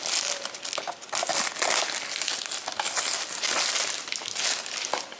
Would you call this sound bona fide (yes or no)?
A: yes